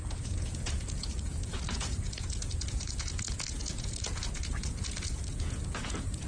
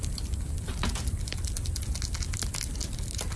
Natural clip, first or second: second